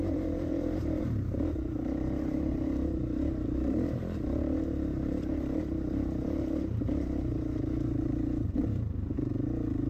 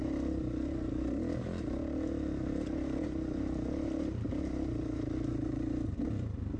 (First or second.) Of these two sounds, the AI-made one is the first